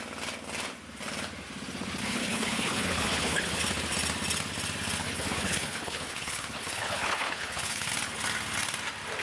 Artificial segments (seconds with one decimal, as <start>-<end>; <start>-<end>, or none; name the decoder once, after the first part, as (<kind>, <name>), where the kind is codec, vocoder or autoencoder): 2.0-3.6 (codec, HILCodec); 5.0-7.9